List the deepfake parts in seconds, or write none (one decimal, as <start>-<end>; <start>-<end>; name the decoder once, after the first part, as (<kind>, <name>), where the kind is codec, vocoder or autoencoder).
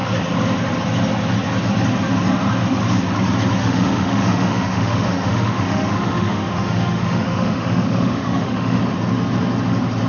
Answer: 3.6-8.8 (autoencoder, DAC-VAE)